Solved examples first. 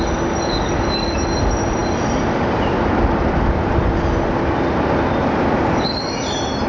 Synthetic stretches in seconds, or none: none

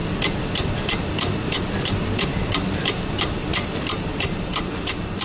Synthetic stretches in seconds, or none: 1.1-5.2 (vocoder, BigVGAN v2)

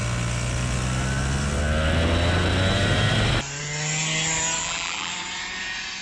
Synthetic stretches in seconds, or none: 4.6-5.1 (vocoder, BigVGAN v2)

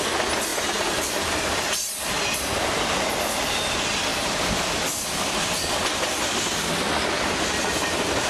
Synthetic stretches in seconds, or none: 0.5-3.4 (vocoder, BigVGAN v2); 4.1-5.5

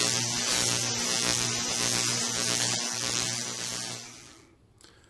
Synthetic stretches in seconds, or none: none

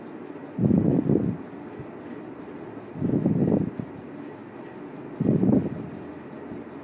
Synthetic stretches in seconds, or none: none

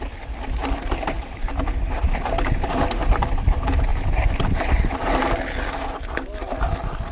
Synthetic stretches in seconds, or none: 0.6-3.2 (vocoder, BigVGAN v2); 3.9-5.2